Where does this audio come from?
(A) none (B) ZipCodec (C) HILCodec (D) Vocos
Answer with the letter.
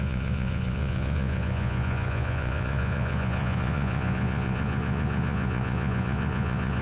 D